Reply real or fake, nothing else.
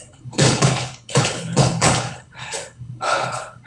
fake